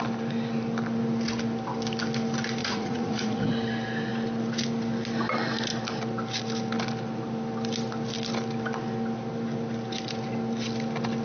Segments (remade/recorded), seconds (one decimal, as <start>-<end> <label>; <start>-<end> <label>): 0.0-2.6 recorded; 2.6-3.5 remade; 3.5-11.2 recorded